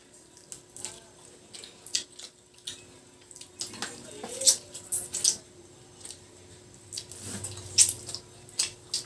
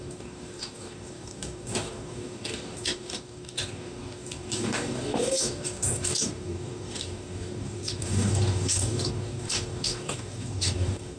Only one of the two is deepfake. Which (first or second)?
second